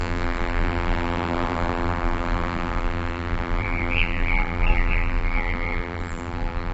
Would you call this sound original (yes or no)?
no